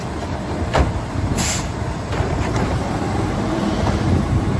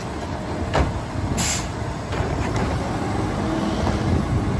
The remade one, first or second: first